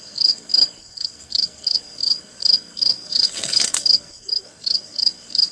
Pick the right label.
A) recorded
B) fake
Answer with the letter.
B